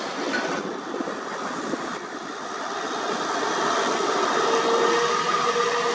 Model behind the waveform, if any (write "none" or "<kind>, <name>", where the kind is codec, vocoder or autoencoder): none